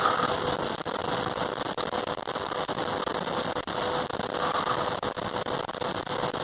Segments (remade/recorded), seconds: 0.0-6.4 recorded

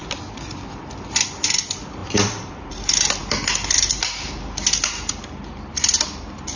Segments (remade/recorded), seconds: 0.0-6.6 recorded

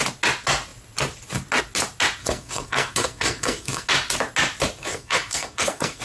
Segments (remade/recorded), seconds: 0.0-2.2 recorded; 2.2-3.9 remade; 3.9-4.8 recorded; 4.8-6.0 remade

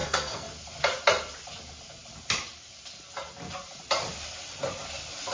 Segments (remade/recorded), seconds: 0.0-0.5 remade; 0.5-5.3 recorded

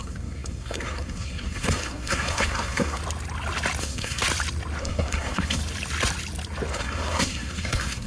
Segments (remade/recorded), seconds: 0.0-3.0 remade; 3.0-3.8 recorded; 3.8-4.2 remade; 4.2-4.8 recorded; 4.8-5.6 remade; 5.6-6.7 recorded; 6.7-8.1 remade

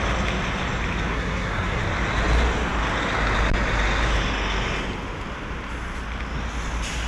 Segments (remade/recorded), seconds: 0.0-1.1 recorded; 1.1-1.8 remade; 1.8-7.1 recorded